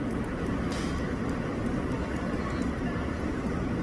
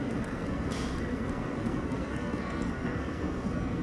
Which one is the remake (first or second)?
second